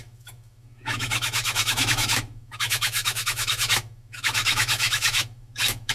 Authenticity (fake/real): fake